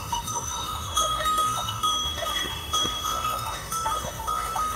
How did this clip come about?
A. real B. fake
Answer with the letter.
B